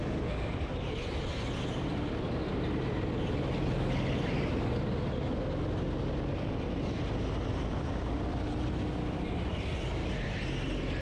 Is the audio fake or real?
real